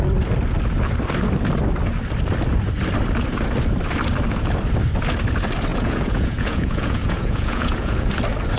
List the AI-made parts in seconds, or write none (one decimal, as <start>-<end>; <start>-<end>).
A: 5.7-8.1